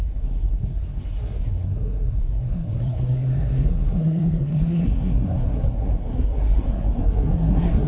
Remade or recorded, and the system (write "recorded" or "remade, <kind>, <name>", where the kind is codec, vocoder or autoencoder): remade, codec, SNAC